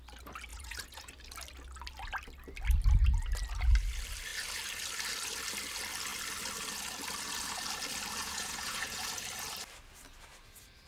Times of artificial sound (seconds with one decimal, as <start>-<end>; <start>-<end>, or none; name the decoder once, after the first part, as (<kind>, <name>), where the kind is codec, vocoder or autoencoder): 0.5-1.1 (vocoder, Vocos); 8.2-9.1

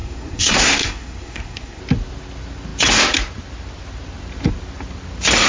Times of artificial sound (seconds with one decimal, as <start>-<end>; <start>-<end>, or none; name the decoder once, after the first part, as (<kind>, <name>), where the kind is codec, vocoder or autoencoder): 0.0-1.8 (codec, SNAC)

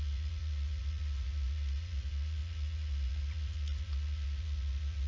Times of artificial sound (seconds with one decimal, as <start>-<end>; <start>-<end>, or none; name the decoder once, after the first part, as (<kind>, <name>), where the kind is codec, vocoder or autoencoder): 0.0-5.1 (vocoder, Vocos)